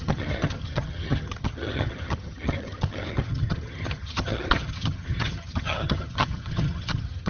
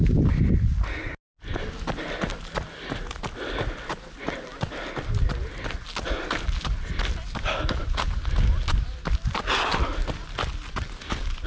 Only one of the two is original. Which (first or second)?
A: second